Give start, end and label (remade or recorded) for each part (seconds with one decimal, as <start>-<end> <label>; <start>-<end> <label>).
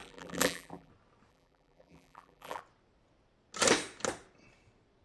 0.0-0.9 remade; 0.9-1.3 recorded; 1.3-2.6 remade; 2.6-5.0 recorded